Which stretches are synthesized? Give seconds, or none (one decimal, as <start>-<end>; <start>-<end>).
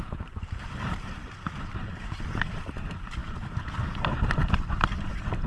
0.0-1.2; 1.7-3.2; 5.1-5.5